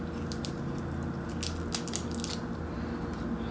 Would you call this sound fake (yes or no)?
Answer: no